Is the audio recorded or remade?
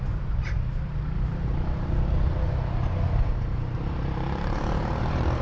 remade